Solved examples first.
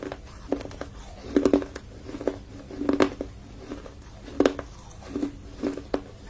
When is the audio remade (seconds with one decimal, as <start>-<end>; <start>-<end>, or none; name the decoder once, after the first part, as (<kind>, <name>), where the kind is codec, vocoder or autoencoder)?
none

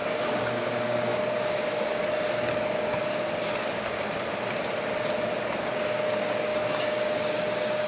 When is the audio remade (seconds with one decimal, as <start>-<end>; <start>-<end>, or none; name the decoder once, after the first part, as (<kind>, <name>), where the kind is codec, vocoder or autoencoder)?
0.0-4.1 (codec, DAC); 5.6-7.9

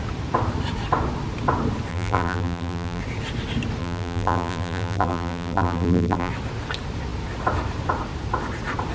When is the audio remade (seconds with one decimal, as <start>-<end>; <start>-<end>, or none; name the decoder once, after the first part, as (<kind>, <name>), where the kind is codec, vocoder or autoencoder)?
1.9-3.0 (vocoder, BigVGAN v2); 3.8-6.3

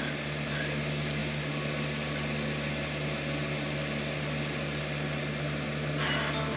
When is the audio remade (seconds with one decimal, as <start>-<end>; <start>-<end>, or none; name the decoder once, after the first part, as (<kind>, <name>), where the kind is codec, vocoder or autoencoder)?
none